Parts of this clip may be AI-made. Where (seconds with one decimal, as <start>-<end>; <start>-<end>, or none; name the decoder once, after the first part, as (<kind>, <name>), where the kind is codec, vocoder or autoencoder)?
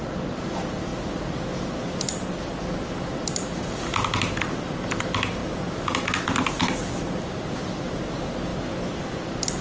none